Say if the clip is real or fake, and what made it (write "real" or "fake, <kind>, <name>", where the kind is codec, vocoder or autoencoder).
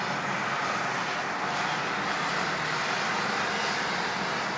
real